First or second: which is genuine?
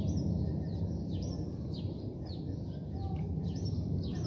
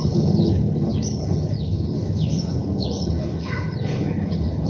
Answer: first